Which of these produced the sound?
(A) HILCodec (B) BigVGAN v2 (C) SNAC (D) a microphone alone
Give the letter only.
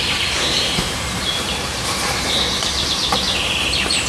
B